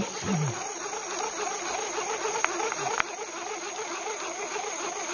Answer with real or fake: real